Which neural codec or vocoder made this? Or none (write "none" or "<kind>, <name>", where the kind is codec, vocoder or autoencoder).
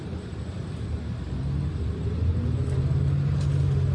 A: none